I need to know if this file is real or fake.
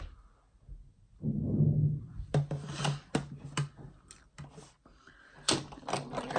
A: real